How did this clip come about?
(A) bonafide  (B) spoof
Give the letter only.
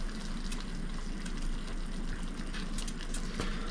A